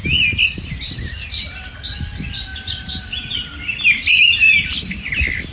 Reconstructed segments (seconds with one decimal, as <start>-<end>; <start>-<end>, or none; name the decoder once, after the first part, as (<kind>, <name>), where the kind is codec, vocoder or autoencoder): 0.8-5.5 (vocoder, BigVGAN v2)